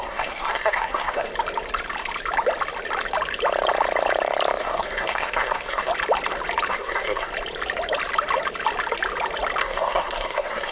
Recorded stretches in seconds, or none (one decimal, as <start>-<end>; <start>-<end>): 1.3-4.6; 5.9-6.7; 7.3-9.6

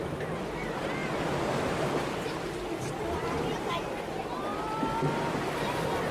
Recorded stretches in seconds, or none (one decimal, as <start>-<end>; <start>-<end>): 0.0-6.1

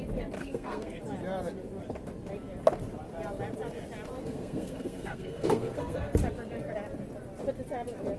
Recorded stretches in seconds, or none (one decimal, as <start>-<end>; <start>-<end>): 0.0-0.4; 1.0-4.2; 6.1-8.2

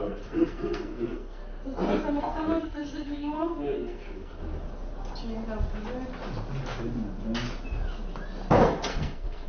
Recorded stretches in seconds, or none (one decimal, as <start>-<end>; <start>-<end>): 1.4-2.2; 4.4-8.5

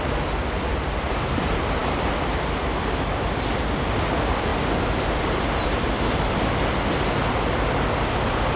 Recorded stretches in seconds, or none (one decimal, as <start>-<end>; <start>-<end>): 0.0-8.6